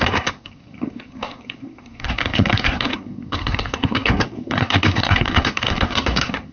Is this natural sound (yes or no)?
no